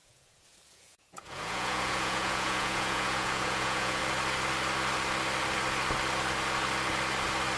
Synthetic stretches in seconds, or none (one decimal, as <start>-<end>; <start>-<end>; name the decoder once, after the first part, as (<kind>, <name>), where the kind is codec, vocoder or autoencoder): 0.0-4.0 (vocoder, Vocos)